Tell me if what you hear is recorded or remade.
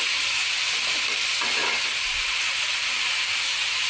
recorded